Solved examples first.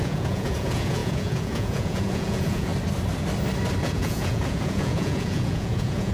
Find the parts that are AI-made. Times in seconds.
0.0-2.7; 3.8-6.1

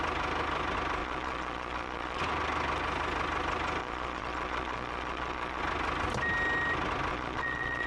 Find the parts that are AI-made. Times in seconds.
1.0-2.2; 3.8-5.6; 7.1-7.9